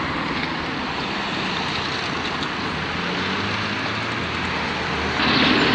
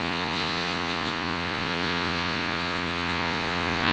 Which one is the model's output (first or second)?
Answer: second